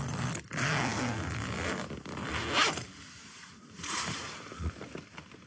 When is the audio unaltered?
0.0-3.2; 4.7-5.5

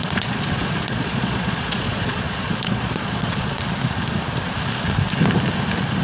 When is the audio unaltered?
3.6-6.0

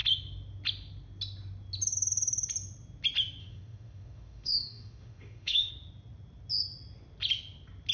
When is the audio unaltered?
0.0-3.4; 5.7-7.9

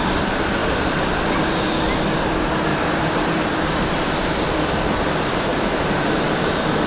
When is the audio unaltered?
0.0-0.6; 1.1-2.7; 3.7-5.5; 6.2-6.9

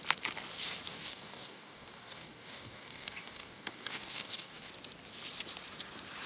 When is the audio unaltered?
0.0-0.9; 4.7-6.3

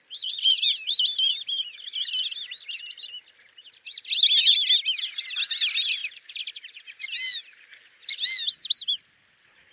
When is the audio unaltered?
0.0-9.7